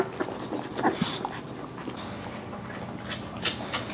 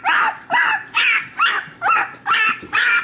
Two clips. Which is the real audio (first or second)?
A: first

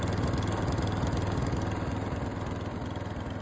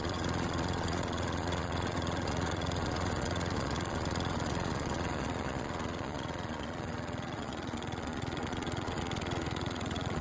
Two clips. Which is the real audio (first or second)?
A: first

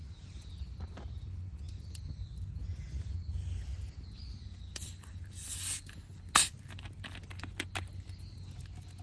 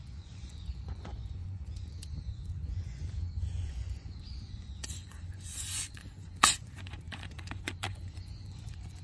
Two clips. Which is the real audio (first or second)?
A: first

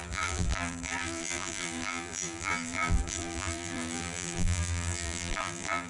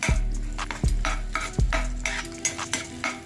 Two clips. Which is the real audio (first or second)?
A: second